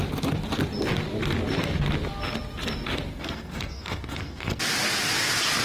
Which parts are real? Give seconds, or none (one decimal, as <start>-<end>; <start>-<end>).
0.0-3.1; 4.6-5.6